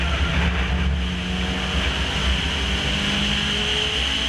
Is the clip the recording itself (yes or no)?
yes